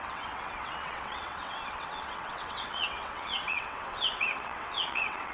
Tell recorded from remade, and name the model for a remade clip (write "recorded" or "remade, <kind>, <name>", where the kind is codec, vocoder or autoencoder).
remade, vocoder, WaveNeXt